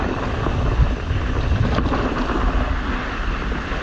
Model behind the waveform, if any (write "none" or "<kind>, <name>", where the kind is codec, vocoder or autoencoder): none